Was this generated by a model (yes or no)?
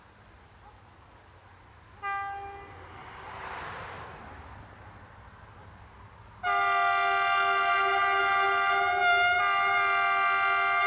no